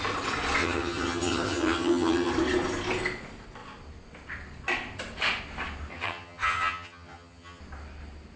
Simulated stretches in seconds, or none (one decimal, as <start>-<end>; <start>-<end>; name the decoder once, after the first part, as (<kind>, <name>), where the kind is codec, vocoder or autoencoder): 0.6-2.3 (vocoder, HiFi-GAN); 5.9-7.6